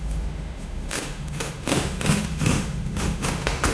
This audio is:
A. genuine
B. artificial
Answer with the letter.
B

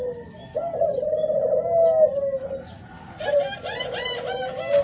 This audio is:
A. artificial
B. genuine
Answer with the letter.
B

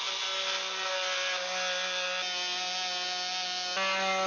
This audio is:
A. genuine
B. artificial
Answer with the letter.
A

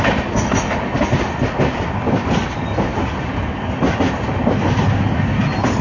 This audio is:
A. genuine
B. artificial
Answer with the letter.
A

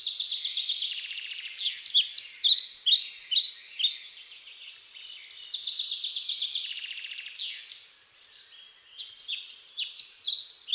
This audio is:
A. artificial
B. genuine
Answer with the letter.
B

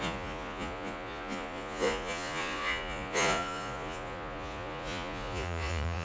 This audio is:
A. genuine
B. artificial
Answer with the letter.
B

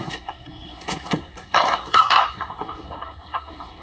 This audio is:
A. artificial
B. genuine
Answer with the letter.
A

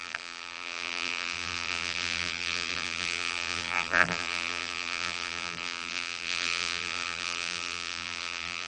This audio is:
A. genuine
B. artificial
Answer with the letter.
B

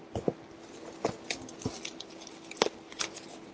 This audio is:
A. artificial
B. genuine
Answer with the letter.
B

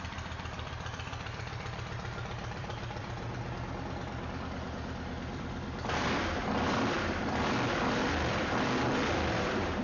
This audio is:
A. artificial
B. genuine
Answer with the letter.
A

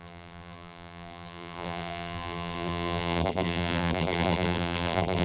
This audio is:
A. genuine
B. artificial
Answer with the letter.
B